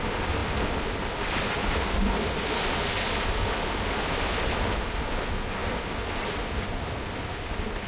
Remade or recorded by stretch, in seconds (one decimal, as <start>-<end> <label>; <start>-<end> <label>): 0.0-7.9 recorded